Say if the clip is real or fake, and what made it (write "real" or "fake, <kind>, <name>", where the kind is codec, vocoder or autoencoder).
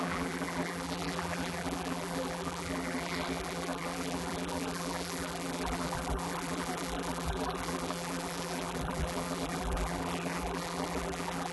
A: fake, vocoder, BigVGAN v2